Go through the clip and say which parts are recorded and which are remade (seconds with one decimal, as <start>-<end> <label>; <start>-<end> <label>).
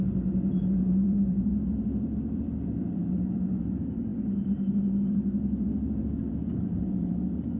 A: 0.0-7.6 remade